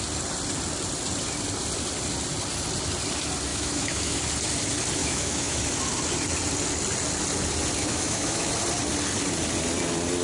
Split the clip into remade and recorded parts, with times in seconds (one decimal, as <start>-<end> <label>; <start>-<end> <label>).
0.0-3.5 recorded; 3.5-4.2 remade; 4.2-5.0 recorded; 5.0-5.6 remade; 5.6-7.8 recorded; 7.8-8.5 remade; 8.5-10.2 recorded